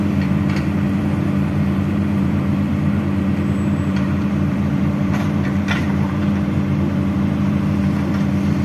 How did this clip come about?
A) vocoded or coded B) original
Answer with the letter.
A